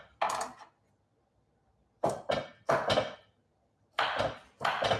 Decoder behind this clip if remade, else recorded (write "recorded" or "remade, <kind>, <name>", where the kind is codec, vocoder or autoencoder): recorded